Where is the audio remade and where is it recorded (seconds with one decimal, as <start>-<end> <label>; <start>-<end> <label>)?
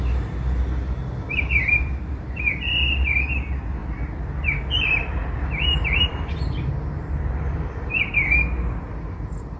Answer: 0.0-1.0 recorded; 1.0-2.3 remade; 2.3-3.8 recorded; 3.8-7.9 remade; 7.9-9.6 recorded